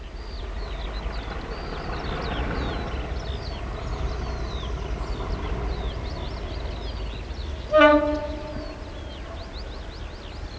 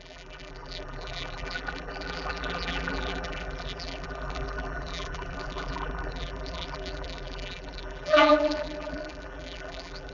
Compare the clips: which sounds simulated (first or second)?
second